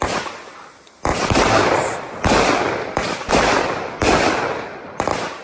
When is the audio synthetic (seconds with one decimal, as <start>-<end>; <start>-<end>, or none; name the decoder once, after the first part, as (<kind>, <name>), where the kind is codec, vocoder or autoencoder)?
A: none